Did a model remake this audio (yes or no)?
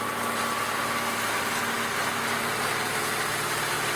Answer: no